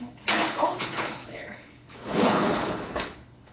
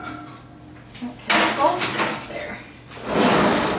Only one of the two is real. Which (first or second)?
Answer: second